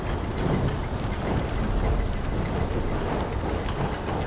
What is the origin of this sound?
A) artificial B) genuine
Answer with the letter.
B